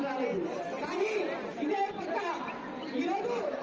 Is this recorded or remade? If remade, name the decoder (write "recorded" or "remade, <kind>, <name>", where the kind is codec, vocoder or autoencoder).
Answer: recorded